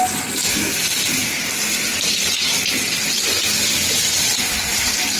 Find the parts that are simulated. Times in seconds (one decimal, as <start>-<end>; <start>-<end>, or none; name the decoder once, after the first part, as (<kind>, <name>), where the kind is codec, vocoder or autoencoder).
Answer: none